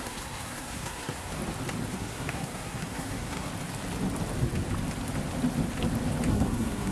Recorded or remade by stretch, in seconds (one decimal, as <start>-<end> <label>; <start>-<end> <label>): 0.0-1.4 remade; 1.4-2.0 recorded; 2.0-3.5 remade; 3.5-6.3 recorded; 6.3-6.9 remade